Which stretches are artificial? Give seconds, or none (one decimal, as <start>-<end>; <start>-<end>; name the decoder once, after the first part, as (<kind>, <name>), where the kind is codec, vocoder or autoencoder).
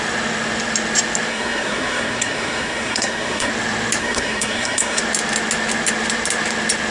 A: 1.3-3.5 (codec, SNAC); 4.0-5.0